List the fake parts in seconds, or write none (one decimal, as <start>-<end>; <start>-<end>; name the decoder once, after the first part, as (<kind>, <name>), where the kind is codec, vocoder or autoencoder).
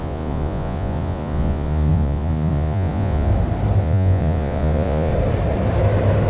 0.0-3.3 (vocoder, Vocos); 3.8-5.1